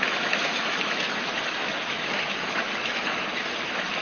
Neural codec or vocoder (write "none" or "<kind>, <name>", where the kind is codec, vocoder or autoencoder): autoencoder, DAC-VAE